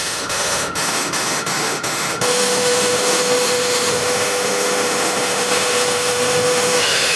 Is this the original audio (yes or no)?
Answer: no